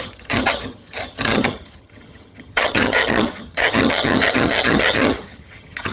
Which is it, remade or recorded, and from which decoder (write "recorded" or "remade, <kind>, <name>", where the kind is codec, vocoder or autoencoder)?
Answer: remade, vocoder, HiFi-GAN